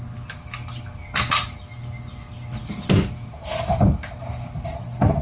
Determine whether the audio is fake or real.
real